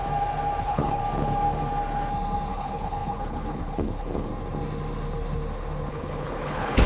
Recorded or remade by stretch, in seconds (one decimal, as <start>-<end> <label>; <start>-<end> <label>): 0.0-0.6 recorded; 0.6-1.0 remade; 1.0-2.5 recorded; 2.5-4.3 remade; 4.3-5.9 recorded; 5.9-6.9 remade